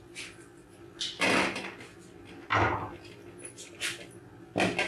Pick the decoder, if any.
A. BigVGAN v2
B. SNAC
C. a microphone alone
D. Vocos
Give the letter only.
C